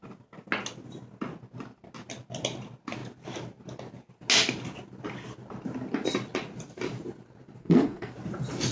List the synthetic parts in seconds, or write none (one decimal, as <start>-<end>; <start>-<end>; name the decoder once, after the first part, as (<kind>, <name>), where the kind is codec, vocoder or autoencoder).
7.6-8.1 (codec, SNAC)